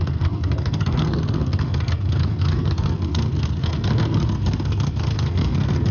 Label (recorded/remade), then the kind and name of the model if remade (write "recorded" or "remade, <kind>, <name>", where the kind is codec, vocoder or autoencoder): remade, codec, SNAC